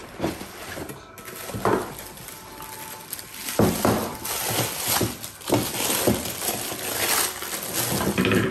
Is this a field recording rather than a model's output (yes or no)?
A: yes